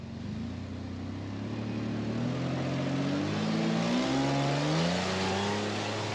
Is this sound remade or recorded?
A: recorded